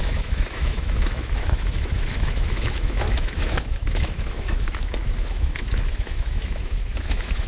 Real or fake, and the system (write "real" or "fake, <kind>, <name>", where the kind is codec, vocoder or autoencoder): fake, autoencoder, DAC-VAE